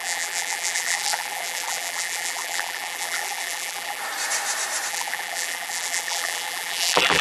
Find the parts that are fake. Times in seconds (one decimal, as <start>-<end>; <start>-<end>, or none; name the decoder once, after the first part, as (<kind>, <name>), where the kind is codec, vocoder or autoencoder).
0.0-4.0 (vocoder, BigVGAN v2); 4.9-7.2